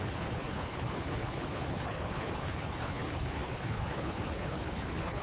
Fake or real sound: fake